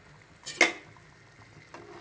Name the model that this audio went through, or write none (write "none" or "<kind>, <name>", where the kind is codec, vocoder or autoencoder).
none